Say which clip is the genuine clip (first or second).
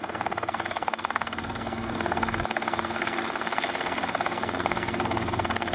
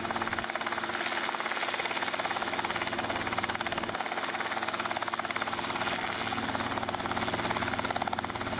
second